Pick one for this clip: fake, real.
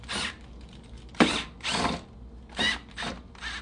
real